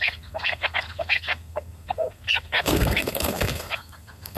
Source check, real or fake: fake